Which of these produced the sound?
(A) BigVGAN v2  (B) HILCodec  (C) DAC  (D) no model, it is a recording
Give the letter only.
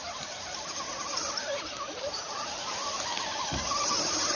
D